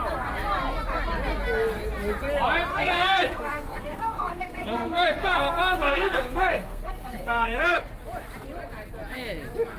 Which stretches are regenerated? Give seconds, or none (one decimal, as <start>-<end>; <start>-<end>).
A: 2.7-7.8